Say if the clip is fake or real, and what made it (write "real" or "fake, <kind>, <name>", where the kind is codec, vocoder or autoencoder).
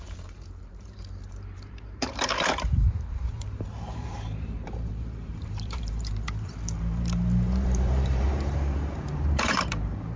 fake, vocoder, BigVGAN v2